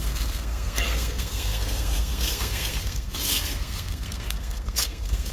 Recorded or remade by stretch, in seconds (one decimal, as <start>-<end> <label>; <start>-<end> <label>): 0.0-5.3 remade